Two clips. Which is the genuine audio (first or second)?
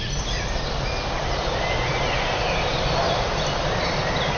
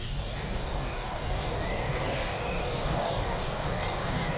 first